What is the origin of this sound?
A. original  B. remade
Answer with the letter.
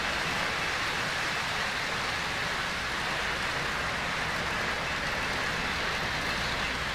A